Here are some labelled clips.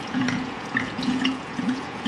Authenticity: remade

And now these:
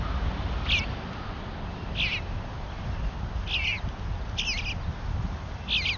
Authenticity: recorded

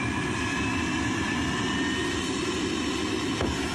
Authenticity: recorded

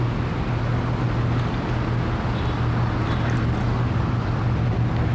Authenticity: recorded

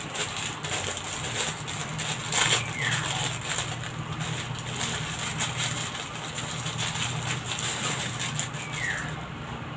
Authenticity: recorded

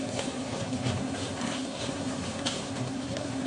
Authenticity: remade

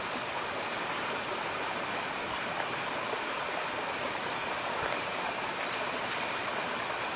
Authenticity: recorded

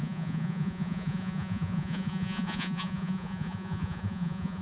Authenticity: remade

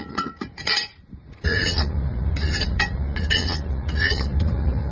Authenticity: remade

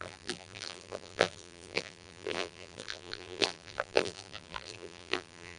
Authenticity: remade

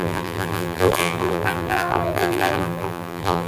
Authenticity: remade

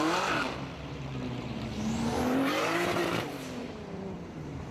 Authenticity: remade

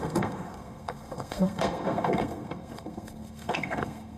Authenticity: remade